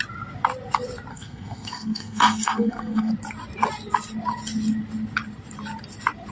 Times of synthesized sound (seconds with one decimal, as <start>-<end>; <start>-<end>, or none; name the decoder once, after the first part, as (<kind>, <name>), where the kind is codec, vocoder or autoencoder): 1.1-3.1 (codec, SNAC)